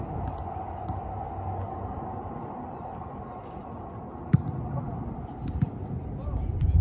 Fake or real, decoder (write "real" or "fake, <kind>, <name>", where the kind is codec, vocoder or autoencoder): real